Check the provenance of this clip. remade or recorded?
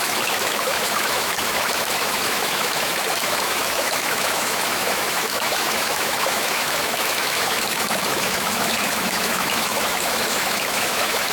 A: remade